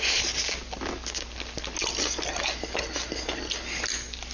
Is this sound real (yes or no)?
yes